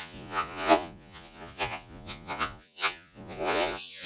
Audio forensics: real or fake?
fake